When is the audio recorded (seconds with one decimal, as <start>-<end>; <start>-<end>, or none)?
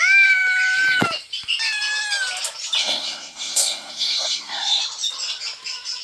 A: 0.0-2.8; 4.8-6.0